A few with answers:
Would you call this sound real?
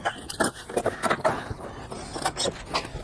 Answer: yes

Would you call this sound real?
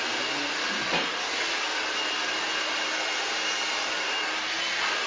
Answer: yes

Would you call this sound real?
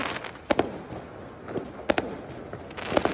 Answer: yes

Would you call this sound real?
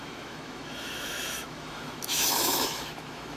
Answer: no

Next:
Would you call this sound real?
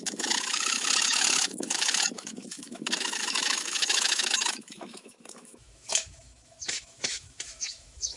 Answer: no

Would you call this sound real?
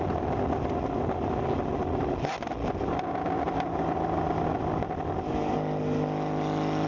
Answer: yes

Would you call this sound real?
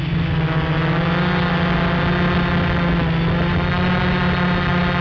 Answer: yes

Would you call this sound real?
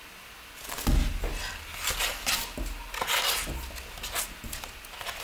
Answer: yes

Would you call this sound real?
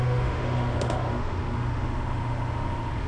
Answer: no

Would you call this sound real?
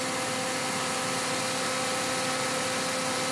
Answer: yes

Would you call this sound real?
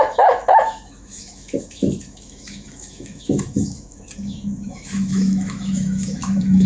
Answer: no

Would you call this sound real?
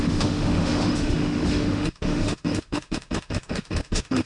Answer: no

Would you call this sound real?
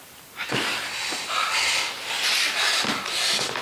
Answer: yes